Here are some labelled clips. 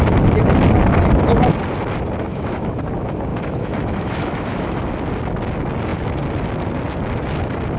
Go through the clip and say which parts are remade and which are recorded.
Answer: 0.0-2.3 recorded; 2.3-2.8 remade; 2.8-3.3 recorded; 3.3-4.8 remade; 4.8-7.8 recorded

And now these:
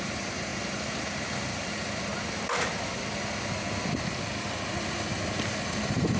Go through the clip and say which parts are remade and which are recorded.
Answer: 0.0-2.1 remade; 2.1-5.8 recorded; 5.8-6.2 remade

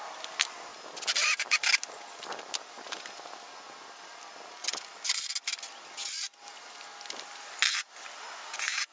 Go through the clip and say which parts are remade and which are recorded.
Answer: 0.0-8.9 recorded

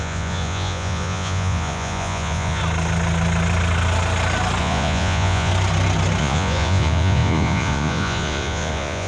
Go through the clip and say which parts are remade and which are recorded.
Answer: 0.0-2.6 remade; 2.6-4.6 recorded; 4.6-5.5 remade; 5.5-6.2 recorded; 6.2-9.1 remade

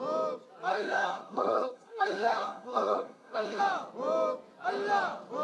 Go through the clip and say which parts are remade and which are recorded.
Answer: 0.0-0.7 recorded; 0.7-3.6 remade; 3.6-5.4 recorded

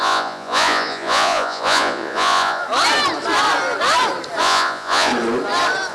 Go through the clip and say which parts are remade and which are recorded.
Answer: 0.0-2.6 remade; 2.6-4.4 recorded; 4.4-5.1 remade; 5.1-5.9 recorded